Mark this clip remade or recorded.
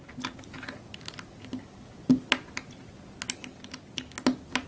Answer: recorded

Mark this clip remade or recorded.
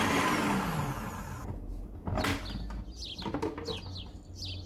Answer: recorded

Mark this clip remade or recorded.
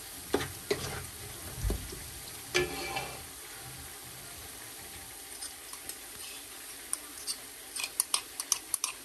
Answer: recorded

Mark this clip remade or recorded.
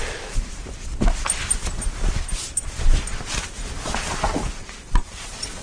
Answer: recorded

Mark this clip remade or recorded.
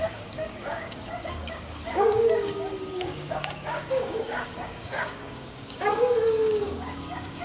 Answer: remade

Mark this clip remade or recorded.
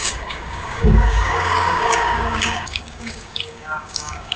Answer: remade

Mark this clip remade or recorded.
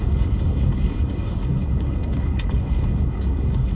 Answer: remade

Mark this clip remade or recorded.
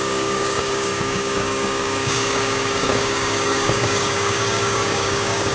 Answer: remade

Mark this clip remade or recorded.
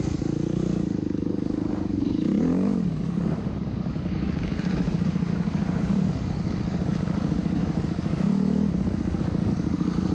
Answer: remade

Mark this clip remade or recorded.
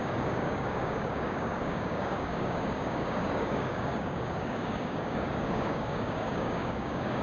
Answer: remade